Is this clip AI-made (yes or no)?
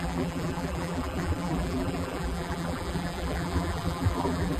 yes